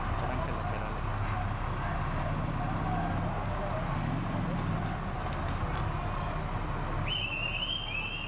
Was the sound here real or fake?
real